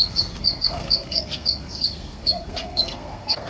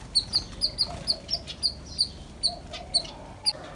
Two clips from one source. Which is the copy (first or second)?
first